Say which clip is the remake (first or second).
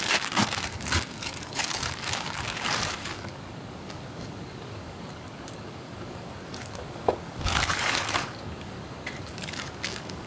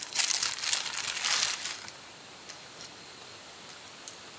first